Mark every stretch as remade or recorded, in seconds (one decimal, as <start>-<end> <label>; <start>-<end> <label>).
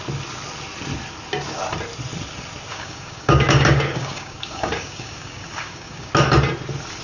0.0-2.7 recorded; 2.7-6.1 remade; 6.1-7.0 recorded